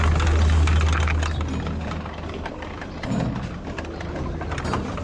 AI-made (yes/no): no